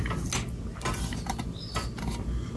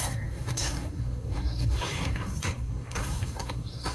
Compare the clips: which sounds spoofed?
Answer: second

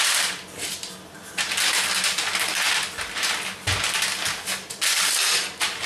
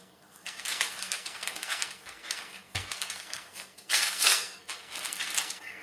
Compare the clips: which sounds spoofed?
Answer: second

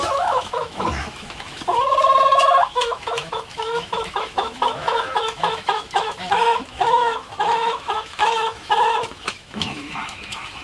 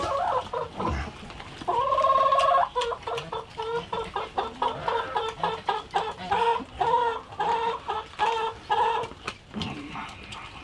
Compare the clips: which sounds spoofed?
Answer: first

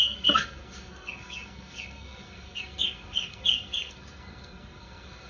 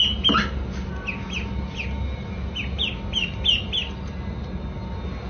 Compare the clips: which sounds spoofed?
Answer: first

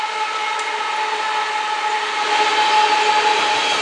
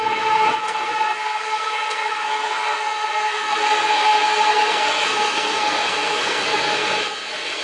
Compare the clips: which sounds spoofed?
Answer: second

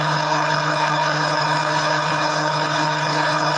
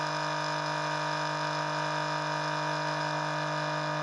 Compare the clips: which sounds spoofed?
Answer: first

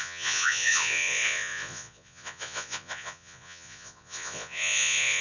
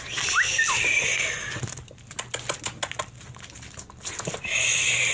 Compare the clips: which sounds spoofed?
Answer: first